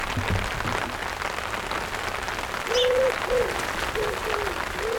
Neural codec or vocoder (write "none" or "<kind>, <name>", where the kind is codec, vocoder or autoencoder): none